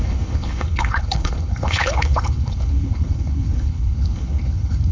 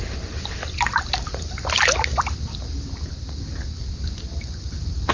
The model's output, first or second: first